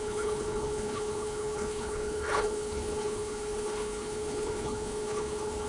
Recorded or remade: remade